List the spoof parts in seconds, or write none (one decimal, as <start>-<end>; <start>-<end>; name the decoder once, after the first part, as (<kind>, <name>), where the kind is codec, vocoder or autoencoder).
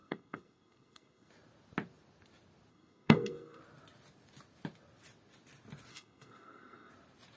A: 0.0-1.3 (codec, SNAC); 2.7-3.6; 5.9-6.9